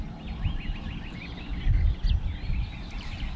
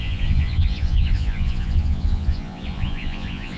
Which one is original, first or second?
first